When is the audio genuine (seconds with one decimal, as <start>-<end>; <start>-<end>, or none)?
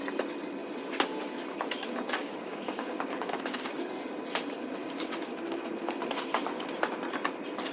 0.0-2.2; 3.7-4.8; 5.7-7.7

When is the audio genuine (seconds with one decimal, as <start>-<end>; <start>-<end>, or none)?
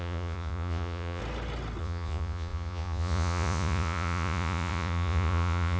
1.2-1.8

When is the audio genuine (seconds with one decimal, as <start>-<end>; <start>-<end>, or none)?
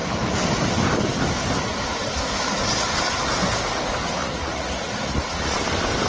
0.0-4.2; 5.6-6.1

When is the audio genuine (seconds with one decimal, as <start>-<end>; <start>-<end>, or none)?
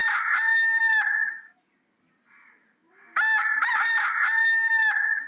0.0-2.3; 2.8-5.3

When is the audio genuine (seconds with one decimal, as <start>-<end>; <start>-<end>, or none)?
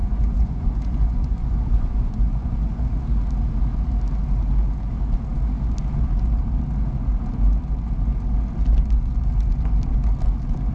2.8-10.7